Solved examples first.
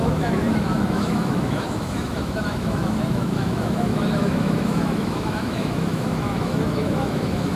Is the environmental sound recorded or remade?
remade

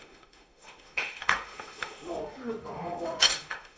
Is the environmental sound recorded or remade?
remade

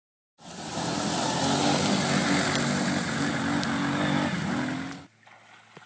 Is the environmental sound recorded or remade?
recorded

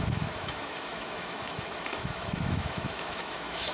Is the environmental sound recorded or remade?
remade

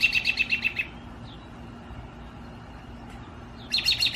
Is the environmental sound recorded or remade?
recorded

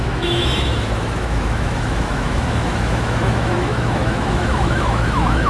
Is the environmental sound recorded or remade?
remade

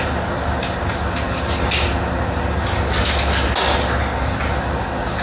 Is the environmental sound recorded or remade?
recorded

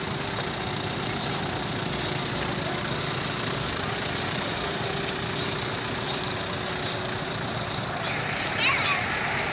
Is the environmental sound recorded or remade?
recorded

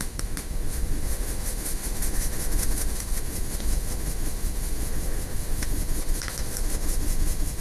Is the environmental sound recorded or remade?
remade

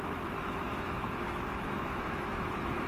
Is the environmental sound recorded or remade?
remade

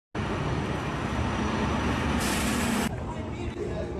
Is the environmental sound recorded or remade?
recorded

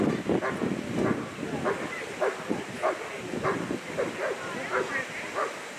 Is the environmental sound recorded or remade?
recorded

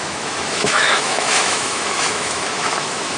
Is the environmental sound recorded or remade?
remade